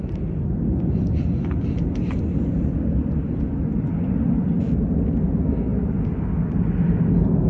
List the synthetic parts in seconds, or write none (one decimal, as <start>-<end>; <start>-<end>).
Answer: none